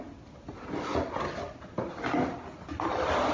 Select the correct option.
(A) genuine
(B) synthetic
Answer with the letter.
A